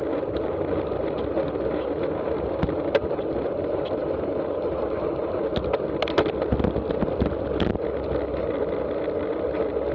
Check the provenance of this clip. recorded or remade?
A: recorded